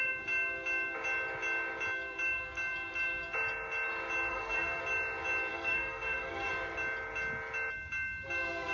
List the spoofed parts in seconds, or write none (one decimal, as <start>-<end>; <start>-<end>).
4.3-4.8; 5.5-6.5